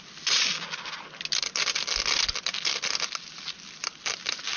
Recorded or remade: recorded